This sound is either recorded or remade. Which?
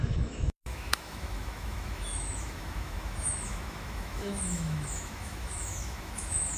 remade